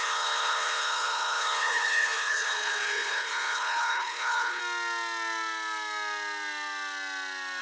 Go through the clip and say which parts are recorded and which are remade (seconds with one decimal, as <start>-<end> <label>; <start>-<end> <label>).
0.0-4.6 remade; 4.6-7.6 recorded